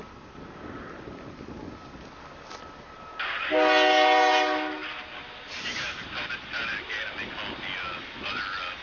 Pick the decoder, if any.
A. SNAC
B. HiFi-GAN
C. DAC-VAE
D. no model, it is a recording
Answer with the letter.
D